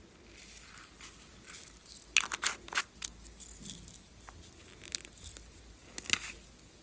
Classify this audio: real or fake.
real